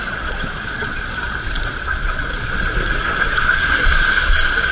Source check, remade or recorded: remade